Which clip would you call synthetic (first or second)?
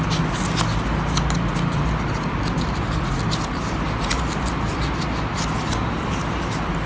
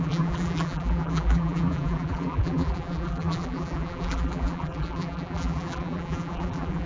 second